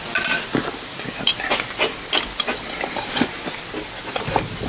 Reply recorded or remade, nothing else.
recorded